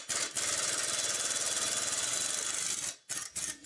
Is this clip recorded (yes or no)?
yes